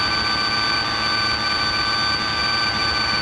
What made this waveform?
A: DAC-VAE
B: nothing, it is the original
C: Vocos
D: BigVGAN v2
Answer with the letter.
B